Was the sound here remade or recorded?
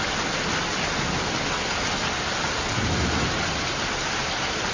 recorded